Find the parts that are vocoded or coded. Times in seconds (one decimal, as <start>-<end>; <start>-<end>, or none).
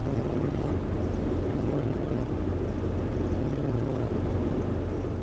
0.0-0.7; 1.5-2.3; 3.4-4.1